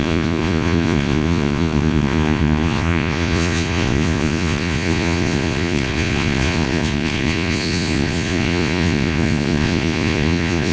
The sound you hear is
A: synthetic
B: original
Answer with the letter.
A